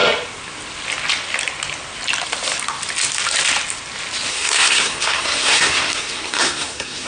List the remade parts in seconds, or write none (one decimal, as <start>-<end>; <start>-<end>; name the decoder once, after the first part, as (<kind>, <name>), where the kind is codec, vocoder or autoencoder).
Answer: 4.3-7.1 (codec, SNAC)